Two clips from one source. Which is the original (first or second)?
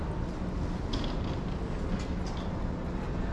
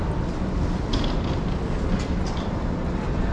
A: first